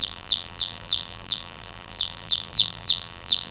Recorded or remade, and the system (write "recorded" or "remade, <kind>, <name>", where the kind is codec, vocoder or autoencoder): remade, vocoder, BigVGAN v2